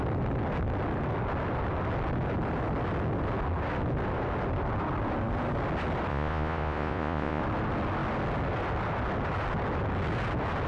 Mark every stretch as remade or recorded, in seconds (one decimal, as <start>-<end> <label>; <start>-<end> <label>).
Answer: 0.0-6.1 recorded; 6.1-7.4 remade; 7.4-10.7 recorded